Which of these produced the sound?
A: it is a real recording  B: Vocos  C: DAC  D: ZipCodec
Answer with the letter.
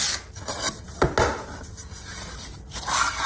A